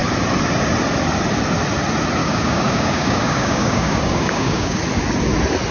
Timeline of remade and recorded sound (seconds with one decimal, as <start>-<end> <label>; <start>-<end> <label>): 0.0-2.2 recorded; 2.2-4.8 remade; 4.8-5.7 recorded